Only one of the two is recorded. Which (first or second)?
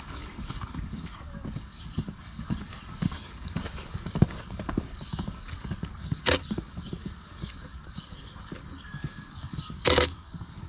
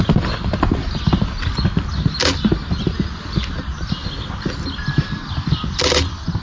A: second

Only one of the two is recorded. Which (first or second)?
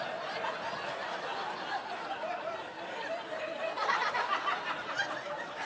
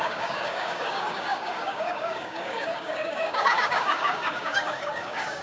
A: first